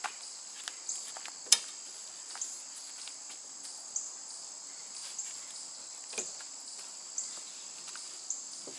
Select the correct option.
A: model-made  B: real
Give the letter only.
B